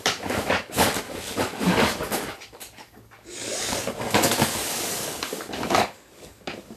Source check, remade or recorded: remade